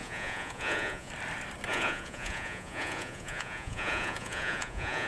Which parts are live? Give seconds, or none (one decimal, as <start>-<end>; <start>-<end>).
1.1-1.7